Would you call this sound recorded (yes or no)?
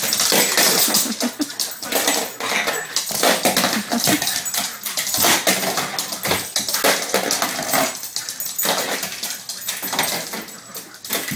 yes